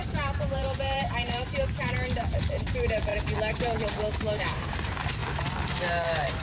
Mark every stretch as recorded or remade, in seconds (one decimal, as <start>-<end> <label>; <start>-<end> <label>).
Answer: 0.0-3.1 remade; 3.1-4.4 recorded; 4.4-5.2 remade; 5.2-5.7 recorded; 5.7-6.4 remade